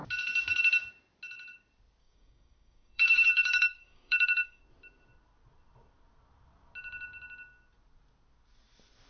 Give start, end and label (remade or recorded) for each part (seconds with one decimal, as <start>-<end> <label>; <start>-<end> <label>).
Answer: 0.0-2.0 recorded; 2.0-4.6 remade; 4.6-9.1 recorded